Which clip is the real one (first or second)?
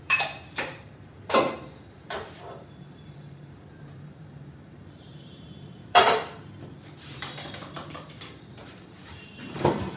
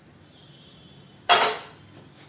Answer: second